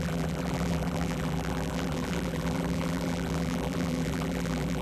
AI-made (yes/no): yes